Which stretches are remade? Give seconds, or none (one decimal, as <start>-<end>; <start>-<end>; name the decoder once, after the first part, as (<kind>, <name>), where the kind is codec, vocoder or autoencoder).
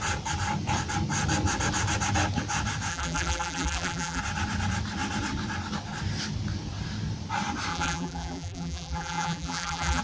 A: 2.9-4.2 (vocoder, BigVGAN v2); 7.7-10.0